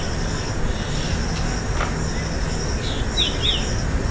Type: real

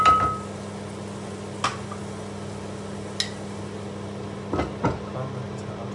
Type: real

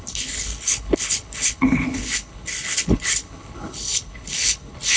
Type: fake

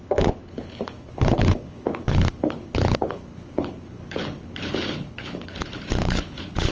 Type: fake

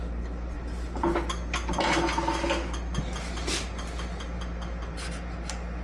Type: real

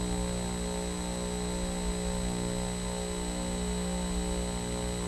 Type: real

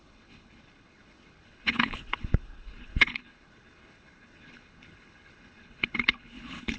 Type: fake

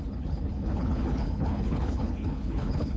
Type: fake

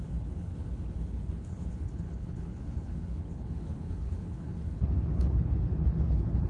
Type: fake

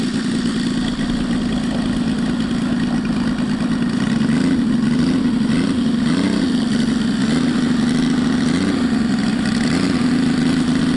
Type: real